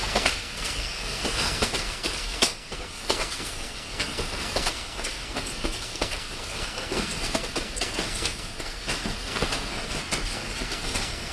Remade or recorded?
remade